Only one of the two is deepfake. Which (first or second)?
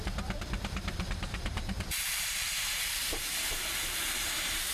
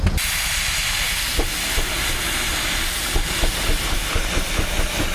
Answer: first